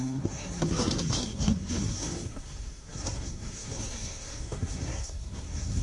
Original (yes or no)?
no